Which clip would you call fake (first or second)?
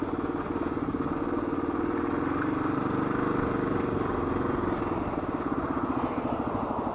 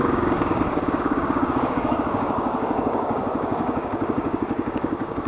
second